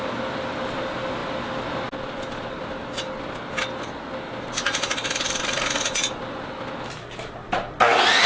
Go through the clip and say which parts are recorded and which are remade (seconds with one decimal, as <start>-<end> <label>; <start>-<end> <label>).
0.0-8.3 recorded